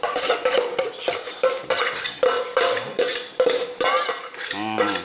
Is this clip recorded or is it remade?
remade